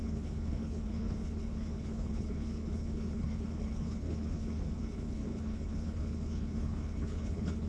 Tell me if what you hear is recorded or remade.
remade